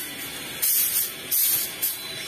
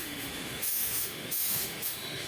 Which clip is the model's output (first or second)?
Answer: second